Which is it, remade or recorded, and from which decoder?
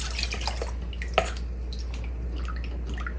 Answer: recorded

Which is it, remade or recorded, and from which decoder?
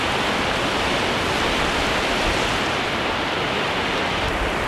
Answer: recorded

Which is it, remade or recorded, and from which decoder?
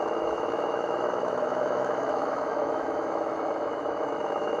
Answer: remade, autoencoder, DAC-VAE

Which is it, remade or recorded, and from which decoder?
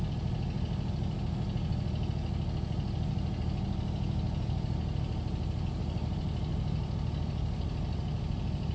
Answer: recorded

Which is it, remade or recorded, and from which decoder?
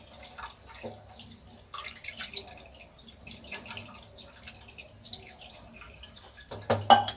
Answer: recorded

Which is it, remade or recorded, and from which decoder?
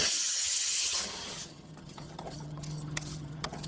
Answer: remade, vocoder, HiFi-GAN